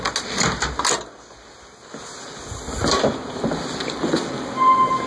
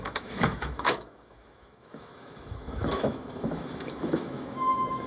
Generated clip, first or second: second